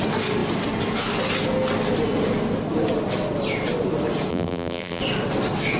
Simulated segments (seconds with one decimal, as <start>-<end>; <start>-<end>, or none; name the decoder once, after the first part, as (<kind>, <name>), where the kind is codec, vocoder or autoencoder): 4.3-5.0 (vocoder, BigVGAN v2)